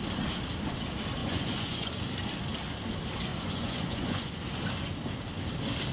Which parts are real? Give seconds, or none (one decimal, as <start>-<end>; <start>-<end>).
0.0-1.2; 1.9-3.3; 4.4-5.9